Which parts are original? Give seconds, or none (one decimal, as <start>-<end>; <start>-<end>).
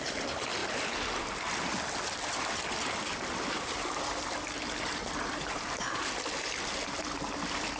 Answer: 0.0-7.8